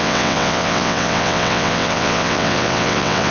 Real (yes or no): no